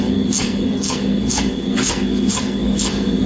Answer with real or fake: fake